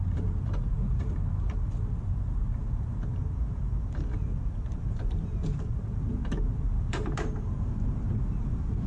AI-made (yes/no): yes